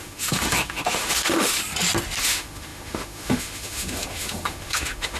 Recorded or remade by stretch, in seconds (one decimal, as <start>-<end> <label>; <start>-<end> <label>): 0.0-1.6 remade; 1.6-2.2 recorded; 2.2-5.2 remade